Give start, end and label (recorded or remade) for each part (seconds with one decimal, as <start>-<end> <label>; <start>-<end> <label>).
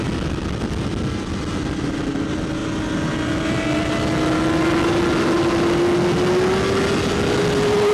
0.0-7.9 recorded